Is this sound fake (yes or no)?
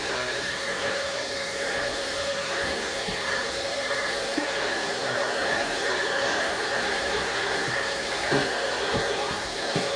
yes